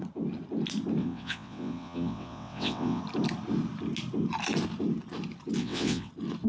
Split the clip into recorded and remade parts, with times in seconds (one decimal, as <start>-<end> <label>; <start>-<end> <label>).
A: 0.0-1.0 recorded; 1.0-3.0 remade; 3.0-5.6 recorded; 5.6-6.1 remade; 6.1-6.5 recorded